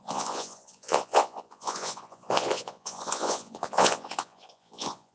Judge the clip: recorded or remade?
remade